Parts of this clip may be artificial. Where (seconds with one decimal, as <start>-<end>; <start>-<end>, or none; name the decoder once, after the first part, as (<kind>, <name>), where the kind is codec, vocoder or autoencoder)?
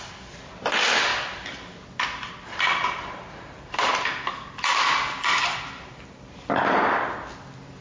none